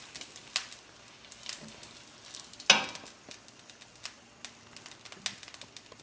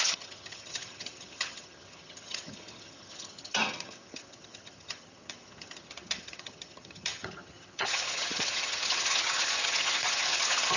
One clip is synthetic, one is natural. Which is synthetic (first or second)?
second